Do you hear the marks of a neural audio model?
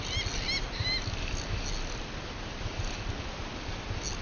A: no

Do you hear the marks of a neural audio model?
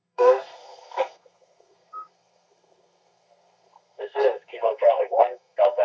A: yes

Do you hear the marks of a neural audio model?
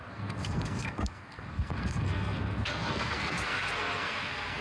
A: yes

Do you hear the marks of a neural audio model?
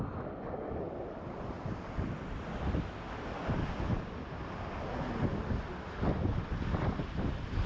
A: no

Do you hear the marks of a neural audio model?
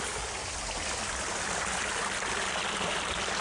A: no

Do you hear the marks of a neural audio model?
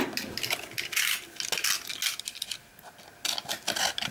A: no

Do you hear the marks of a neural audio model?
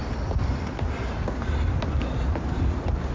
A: no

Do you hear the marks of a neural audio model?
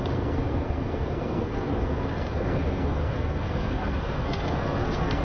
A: yes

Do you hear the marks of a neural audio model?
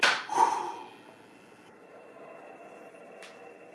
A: no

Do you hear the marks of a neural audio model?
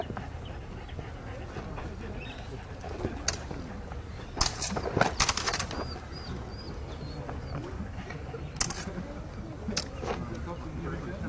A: no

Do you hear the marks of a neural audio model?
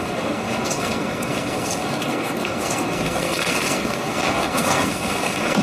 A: yes